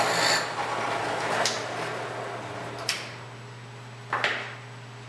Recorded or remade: recorded